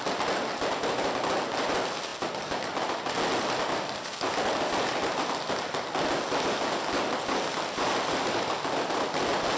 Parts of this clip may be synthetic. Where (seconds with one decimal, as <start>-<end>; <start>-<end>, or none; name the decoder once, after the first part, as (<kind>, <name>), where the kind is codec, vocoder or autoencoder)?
none